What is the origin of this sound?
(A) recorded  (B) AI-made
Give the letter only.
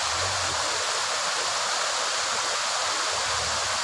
A